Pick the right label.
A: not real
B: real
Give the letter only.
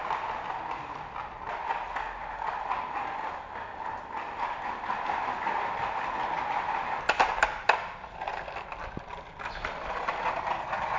B